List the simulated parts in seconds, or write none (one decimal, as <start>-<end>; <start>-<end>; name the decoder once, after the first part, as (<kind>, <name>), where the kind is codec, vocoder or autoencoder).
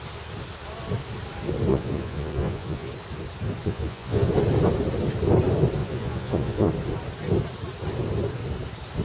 1.7-2.9 (vocoder, Vocos); 3.6-4.3; 5.8-6.7